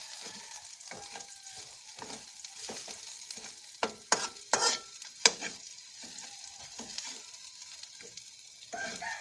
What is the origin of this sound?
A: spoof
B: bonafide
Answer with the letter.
B